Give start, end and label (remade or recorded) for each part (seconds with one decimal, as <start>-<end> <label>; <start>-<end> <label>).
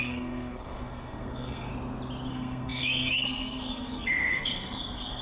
0.0-1.7 remade; 1.7-2.3 recorded; 2.3-5.2 remade